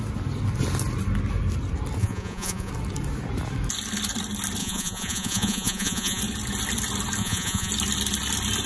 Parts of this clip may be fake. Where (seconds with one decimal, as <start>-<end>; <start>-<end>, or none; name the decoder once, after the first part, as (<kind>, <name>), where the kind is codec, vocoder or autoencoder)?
2.0-2.7 (vocoder, Vocos); 4.6-6.2; 7.2-7.7

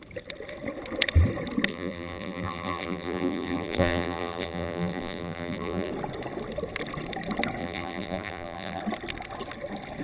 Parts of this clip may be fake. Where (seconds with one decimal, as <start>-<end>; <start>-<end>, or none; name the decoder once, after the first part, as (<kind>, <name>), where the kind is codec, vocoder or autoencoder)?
1.7-5.9 (vocoder, BigVGAN v2); 7.6-8.8

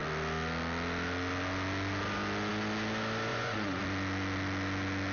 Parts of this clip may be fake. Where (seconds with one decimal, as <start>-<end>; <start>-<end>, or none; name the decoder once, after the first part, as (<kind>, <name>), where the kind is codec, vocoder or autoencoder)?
3.3-3.8 (vocoder, Vocos)

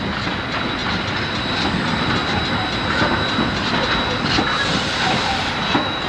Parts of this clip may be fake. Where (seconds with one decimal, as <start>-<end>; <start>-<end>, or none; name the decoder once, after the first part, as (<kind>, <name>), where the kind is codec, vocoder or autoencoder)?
none

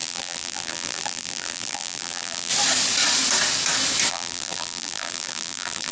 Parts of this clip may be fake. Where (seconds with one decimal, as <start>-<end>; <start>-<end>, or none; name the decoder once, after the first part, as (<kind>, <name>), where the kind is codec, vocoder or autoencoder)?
0.0-2.5 (vocoder, BigVGAN v2); 4.1-5.9

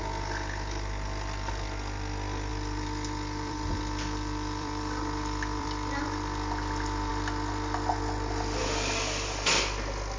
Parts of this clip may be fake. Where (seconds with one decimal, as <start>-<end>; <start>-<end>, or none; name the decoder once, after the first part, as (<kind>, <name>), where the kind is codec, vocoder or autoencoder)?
2.5-6.0 (vocoder, BigVGAN v2)